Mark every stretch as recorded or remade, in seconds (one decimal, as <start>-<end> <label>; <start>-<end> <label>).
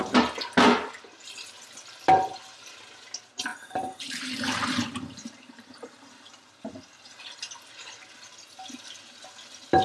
0.0-3.5 recorded; 3.5-6.5 remade; 6.5-9.8 recorded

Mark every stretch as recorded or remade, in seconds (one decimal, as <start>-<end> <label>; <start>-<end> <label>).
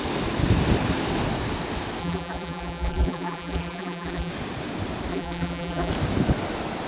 0.0-2.0 recorded; 2.0-4.3 remade; 4.3-5.1 recorded; 5.1-5.9 remade; 5.9-6.9 recorded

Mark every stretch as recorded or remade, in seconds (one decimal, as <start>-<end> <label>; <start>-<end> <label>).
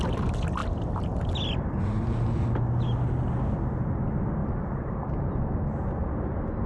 0.0-4.4 recorded; 4.4-4.9 remade; 4.9-6.7 recorded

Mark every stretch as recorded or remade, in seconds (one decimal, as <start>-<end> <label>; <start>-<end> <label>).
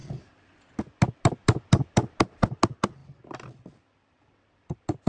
0.0-5.1 recorded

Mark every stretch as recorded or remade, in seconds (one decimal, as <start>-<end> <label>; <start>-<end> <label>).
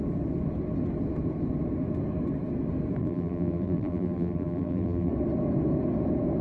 0.0-3.0 recorded; 3.0-5.1 remade; 5.1-6.4 recorded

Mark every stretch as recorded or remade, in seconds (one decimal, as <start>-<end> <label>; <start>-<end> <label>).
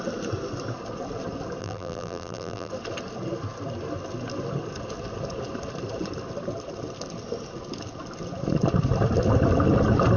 0.0-1.6 recorded; 1.6-2.7 remade; 2.7-10.2 recorded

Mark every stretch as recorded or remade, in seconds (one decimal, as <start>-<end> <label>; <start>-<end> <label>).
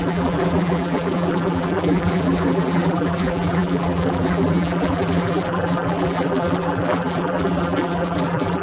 0.0-8.6 remade